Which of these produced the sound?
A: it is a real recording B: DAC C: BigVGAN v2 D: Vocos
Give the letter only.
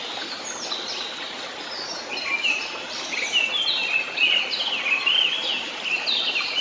A